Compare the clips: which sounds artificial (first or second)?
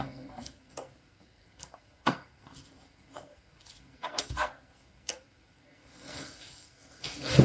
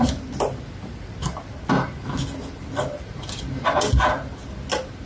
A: first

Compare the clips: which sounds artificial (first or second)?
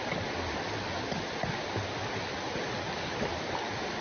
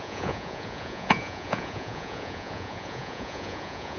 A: second